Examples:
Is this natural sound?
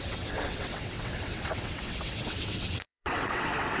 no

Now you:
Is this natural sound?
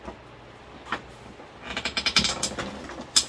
yes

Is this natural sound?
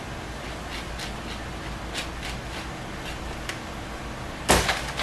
yes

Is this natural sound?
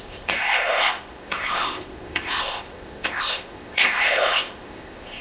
no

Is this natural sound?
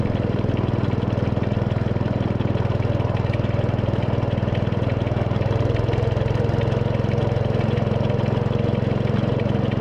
yes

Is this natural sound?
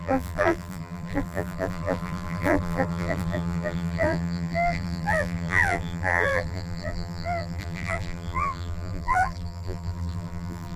no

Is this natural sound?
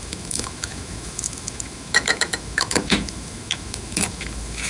no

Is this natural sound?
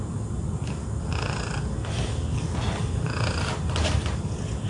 yes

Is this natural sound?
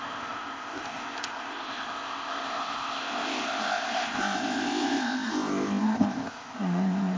no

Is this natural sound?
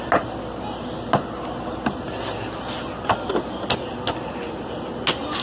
yes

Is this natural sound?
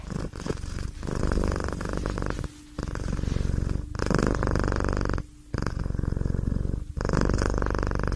yes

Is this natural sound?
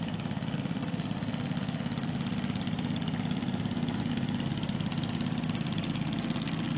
yes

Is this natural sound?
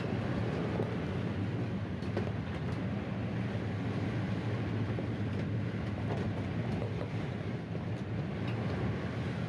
yes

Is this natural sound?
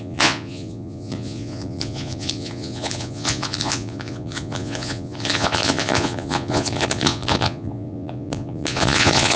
no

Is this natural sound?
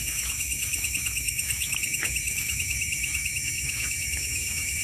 no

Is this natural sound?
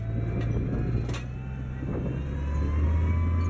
yes